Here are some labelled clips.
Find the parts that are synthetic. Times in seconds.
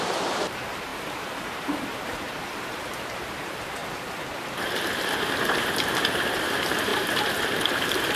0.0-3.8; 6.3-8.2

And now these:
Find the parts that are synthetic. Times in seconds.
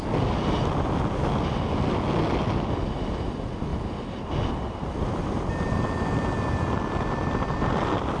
none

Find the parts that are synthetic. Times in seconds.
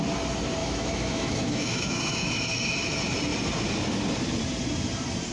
0.6-2.3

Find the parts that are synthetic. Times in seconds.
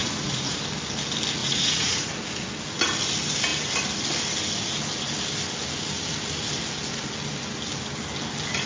0.0-0.6; 1.4-2.1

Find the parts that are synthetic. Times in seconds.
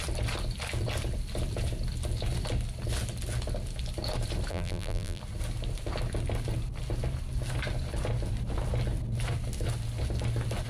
4.5-5.2